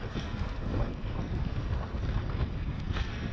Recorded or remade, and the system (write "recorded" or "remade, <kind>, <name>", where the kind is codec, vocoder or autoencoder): remade, codec, SNAC